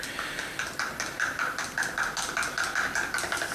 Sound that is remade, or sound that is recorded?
recorded